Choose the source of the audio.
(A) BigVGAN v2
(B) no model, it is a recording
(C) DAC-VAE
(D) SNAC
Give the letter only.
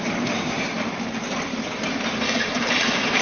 A